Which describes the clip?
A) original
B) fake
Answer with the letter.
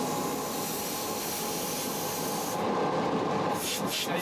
A